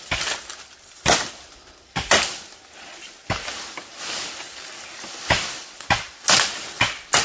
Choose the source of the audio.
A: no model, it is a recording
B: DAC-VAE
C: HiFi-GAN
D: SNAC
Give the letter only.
A